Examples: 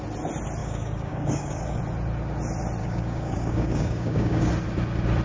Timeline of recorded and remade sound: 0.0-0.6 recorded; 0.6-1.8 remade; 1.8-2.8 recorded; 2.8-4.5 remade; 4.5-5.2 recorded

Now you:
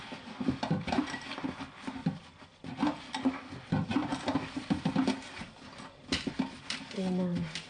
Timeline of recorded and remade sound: 0.0-7.7 recorded